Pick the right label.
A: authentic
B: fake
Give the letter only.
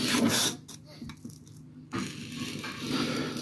A